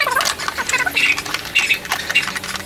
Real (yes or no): yes